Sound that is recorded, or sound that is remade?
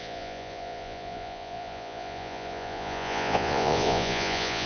remade